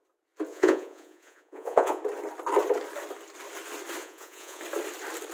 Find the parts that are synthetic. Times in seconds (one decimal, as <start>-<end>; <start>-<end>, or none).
0.5-2.0; 4.0-4.6